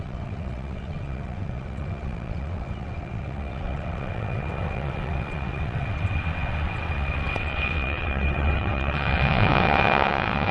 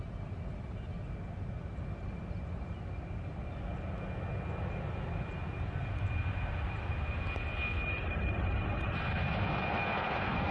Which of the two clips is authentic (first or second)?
second